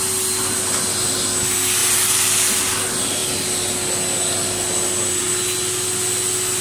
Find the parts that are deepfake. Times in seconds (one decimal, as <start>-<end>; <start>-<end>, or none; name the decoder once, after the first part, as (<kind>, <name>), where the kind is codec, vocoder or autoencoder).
none